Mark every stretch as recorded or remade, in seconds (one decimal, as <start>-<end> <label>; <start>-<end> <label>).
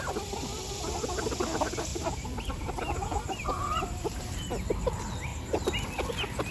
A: 0.0-1.9 recorded; 1.9-4.2 remade; 4.2-6.5 recorded